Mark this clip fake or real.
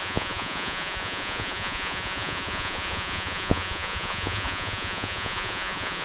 fake